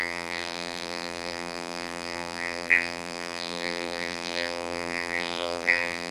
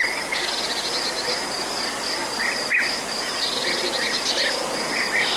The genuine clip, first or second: second